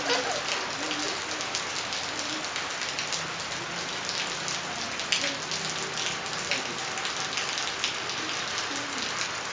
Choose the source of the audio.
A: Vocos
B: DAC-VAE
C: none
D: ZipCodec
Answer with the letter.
C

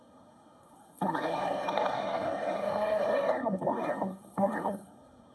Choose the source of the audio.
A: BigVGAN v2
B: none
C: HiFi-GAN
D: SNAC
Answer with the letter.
D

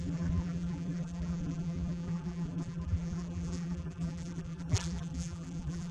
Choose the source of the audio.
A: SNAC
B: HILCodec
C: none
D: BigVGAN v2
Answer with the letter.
D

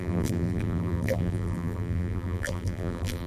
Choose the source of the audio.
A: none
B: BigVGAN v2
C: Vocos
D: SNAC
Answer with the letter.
B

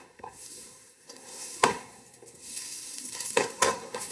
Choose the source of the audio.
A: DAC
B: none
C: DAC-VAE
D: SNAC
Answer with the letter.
D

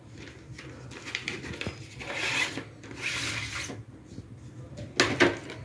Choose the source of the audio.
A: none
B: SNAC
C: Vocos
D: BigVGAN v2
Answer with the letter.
A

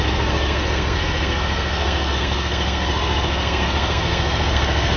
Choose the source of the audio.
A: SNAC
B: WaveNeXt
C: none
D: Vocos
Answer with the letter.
A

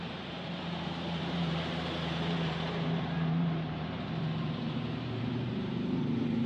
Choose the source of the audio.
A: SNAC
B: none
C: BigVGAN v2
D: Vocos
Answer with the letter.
C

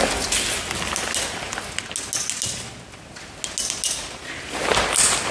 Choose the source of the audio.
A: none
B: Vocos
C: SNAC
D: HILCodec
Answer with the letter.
A